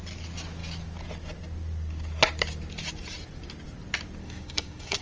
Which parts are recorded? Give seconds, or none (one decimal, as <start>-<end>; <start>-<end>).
0.0-4.2